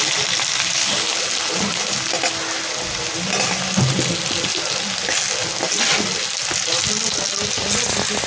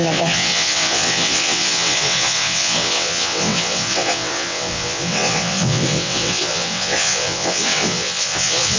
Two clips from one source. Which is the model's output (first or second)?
second